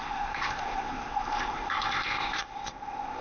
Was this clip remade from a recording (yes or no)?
yes